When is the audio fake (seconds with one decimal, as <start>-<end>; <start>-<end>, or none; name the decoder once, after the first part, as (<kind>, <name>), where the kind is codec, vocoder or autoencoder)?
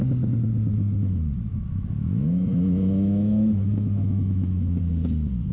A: 1.5-4.8 (autoencoder, DAC-VAE)